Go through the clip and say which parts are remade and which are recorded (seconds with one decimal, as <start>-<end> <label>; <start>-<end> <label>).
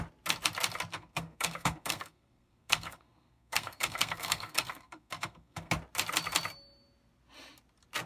0.0-0.9 recorded; 0.9-5.7 remade; 5.7-8.1 recorded